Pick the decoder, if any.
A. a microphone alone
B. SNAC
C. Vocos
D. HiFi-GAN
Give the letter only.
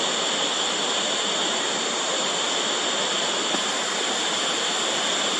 A